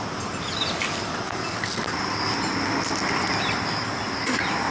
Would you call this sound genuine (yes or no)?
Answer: yes